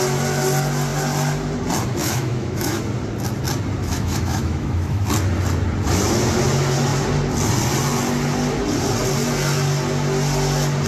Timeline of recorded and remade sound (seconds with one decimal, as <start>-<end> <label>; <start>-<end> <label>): 0.0-2.0 recorded; 2.0-2.8 remade; 2.8-3.8 recorded; 3.8-5.1 remade; 5.1-10.9 recorded